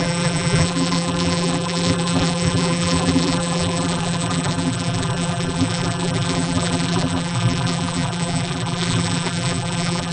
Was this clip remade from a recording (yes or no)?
yes